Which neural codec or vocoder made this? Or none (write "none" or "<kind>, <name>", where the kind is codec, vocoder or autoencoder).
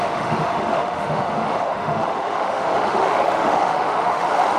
autoencoder, DAC-VAE